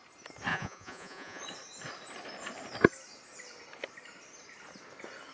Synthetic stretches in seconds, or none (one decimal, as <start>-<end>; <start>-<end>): 0.5-1.4

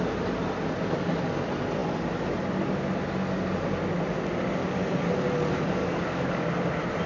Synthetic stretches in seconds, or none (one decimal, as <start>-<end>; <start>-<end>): 5.8-6.5

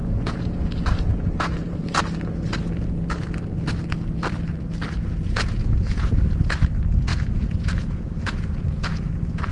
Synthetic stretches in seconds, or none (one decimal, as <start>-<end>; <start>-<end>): 0.0-1.7; 5.0-6.5; 7.1-9.0

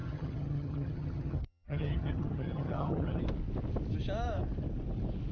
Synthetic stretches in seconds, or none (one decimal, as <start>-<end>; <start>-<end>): 0.0-3.2

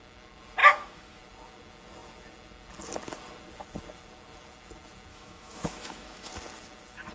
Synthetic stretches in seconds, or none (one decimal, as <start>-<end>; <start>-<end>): 0.6-1.2; 5.1-6.3

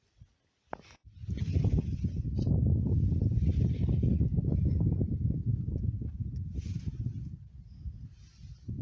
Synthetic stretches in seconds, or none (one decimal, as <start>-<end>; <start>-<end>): none